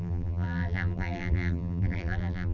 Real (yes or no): no